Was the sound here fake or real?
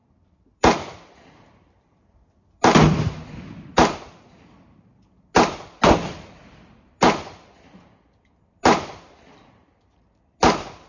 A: real